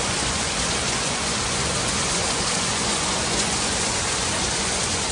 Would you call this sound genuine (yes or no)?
no